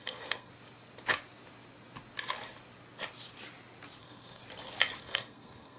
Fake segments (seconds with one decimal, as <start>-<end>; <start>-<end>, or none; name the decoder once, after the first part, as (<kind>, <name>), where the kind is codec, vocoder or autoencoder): 0.0-0.5 (codec, SNAC); 4.0-4.4; 5.0-5.8